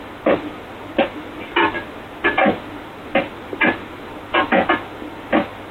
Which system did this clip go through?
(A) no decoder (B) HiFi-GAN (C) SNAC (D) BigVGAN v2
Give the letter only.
A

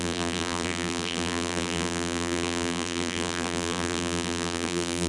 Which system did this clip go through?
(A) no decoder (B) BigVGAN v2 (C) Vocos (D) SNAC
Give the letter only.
B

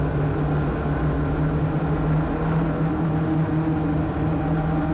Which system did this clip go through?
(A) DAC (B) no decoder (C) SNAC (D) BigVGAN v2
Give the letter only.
B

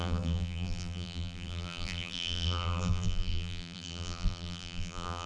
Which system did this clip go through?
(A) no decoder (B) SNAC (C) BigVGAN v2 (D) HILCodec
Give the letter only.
C